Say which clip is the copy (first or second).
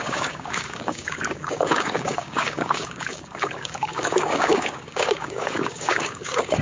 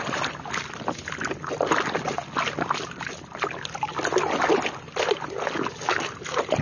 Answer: first